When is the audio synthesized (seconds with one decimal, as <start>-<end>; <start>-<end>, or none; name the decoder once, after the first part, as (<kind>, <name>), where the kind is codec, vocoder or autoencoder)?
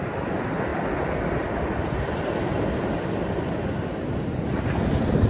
none